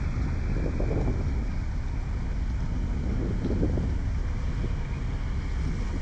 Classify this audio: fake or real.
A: real